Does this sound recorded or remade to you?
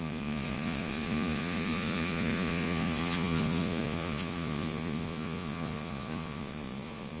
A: remade